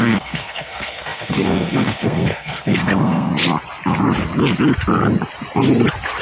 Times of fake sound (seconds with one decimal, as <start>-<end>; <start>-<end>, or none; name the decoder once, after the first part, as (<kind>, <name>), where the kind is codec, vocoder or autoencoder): 0.0-3.3 (codec, SNAC)

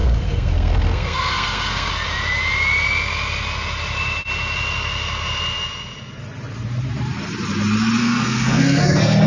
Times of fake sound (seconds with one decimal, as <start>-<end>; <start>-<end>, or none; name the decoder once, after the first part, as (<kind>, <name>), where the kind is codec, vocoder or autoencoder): 0.0-1.9 (codec, SNAC); 8.0-9.3